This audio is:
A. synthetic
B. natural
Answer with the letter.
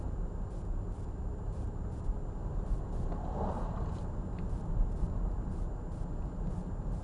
B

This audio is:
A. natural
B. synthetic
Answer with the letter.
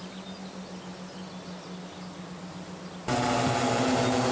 A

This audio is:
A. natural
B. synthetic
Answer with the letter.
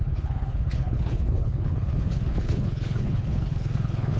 B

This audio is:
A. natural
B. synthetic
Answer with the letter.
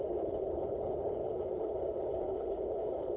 B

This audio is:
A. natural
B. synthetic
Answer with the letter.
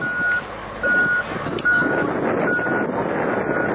A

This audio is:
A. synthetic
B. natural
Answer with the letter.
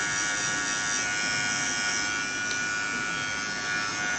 B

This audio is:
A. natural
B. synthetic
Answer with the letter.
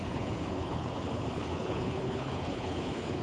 B